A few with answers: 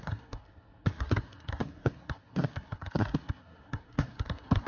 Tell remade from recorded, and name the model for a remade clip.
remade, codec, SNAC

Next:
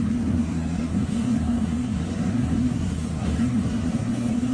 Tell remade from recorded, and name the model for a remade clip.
remade, codec, SNAC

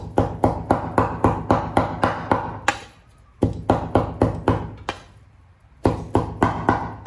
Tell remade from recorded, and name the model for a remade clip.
recorded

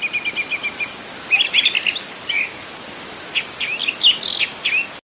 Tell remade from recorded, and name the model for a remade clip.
recorded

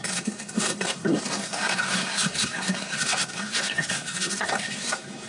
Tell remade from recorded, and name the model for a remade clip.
remade, codec, SNAC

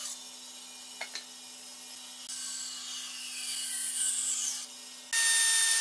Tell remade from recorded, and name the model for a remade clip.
recorded